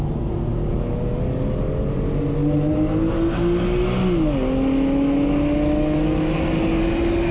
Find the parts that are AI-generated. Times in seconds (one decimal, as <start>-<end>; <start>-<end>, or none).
none